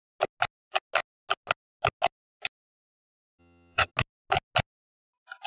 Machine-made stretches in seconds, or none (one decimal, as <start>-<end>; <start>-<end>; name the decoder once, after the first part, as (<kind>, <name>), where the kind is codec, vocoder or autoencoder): 3.4-3.9 (vocoder, HiFi-GAN)